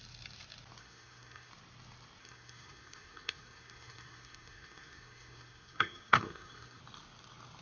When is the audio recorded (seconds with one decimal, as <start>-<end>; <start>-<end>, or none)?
0.0-0.8; 1.5-2.2; 6.8-7.6